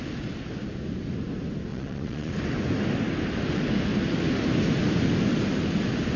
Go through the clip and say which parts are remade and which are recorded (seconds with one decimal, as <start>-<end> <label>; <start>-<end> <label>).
0.0-1.7 recorded; 1.7-2.3 remade; 2.3-6.2 recorded

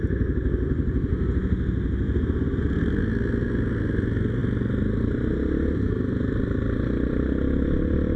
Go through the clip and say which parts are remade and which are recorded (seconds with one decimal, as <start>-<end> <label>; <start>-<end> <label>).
0.0-8.2 recorded